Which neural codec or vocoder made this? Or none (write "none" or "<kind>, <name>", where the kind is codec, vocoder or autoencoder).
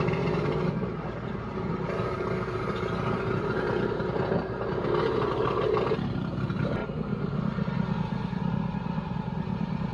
none